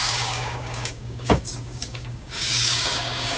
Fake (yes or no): yes